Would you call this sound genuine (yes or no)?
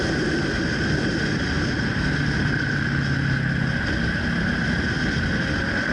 yes